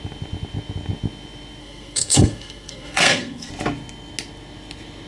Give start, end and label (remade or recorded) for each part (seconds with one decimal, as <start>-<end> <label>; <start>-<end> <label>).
0.0-1.6 recorded; 1.6-3.5 remade; 3.5-5.1 recorded